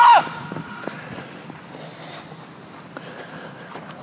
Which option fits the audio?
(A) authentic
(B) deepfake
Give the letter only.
A